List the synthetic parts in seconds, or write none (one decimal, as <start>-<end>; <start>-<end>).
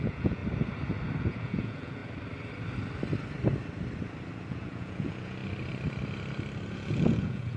0.0-0.4; 1.2-2.0; 4.5-5.4; 6.7-7.6